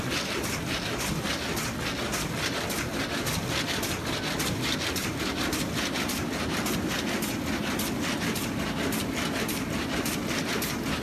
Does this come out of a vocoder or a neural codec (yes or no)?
no